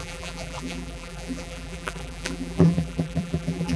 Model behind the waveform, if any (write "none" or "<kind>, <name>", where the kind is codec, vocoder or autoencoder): vocoder, BigVGAN v2